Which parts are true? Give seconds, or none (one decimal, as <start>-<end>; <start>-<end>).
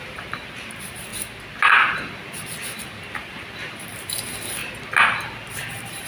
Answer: 1.1-3.6; 4.6-5.4